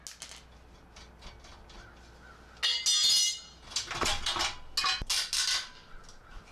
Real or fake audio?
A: real